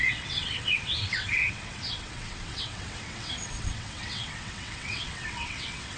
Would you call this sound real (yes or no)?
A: no